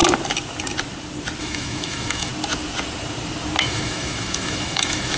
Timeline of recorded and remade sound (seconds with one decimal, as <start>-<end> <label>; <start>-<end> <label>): 0.0-1.4 recorded; 1.4-2.3 remade; 2.3-3.6 recorded; 3.6-5.2 remade